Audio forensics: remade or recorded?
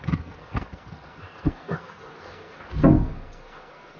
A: remade